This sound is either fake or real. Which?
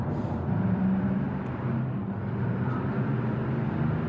real